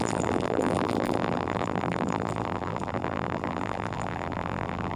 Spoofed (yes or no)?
yes